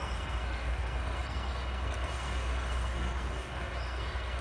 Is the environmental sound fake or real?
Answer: fake